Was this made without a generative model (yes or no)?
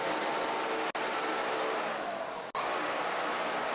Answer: yes